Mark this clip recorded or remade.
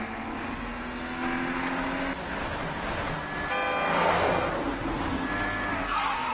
recorded